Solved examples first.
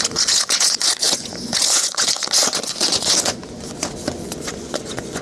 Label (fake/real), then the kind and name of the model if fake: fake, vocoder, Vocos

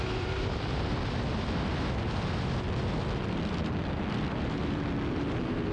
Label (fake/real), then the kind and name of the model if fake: real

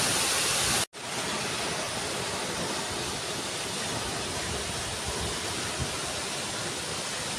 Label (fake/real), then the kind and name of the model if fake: real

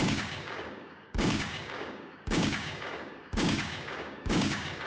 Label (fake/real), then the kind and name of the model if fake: fake, codec, DAC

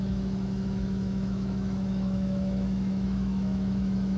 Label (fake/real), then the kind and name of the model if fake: fake, autoencoder, DAC-VAE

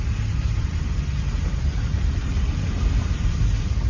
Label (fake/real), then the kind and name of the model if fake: fake, vocoder, BigVGAN v2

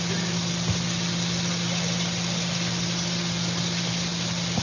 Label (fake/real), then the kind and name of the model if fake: real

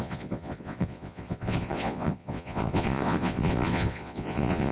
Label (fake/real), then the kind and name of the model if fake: fake, vocoder, Vocos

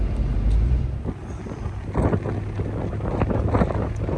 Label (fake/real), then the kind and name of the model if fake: real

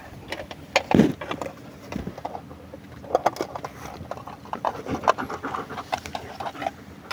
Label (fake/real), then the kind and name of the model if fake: real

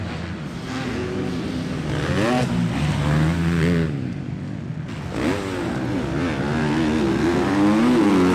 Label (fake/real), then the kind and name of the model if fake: real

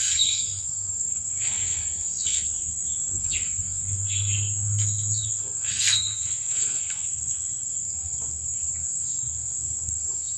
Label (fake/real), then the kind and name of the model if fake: fake, codec, SNAC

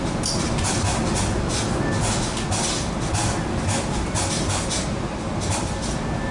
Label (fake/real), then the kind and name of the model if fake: real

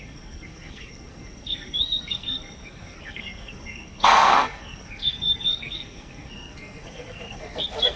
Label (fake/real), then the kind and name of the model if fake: fake, codec, SNAC